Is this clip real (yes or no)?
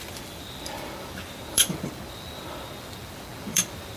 no